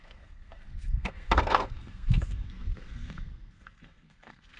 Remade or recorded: remade